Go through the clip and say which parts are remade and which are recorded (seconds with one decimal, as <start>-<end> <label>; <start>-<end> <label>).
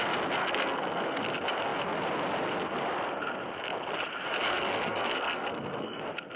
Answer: 0.0-0.4 recorded; 0.4-1.2 remade; 1.2-4.5 recorded; 4.5-6.0 remade; 6.0-6.4 recorded